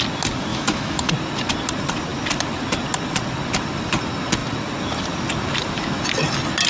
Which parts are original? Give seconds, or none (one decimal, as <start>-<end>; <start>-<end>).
0.0-0.5; 1.1-6.7